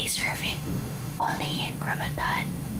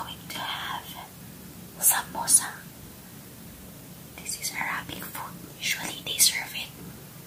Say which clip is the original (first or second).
second